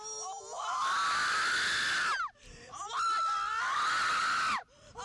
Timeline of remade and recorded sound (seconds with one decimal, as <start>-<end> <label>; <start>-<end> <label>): 0.0-5.0 recorded